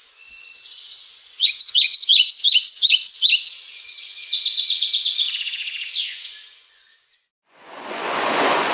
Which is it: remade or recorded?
remade